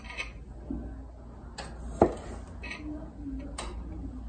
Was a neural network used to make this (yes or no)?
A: no